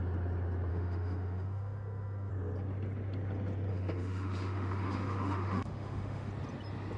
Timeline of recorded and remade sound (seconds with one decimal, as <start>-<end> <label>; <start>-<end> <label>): 0.0-0.7 recorded; 0.7-2.3 remade; 2.3-3.7 recorded; 3.7-6.3 remade; 6.3-7.0 recorded

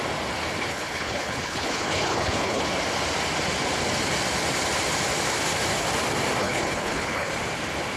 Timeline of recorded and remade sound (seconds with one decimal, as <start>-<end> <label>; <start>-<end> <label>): 0.0-0.7 recorded; 0.7-2.6 remade; 2.6-6.4 recorded; 6.4-7.3 remade; 7.3-8.0 recorded